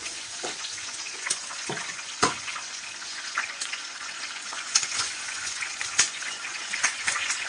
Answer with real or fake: fake